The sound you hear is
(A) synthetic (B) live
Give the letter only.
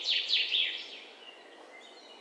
A